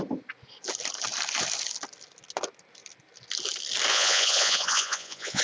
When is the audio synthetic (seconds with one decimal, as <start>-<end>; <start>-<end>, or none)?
3.9-5.4